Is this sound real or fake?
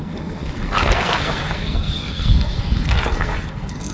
fake